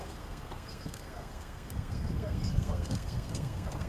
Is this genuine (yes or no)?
no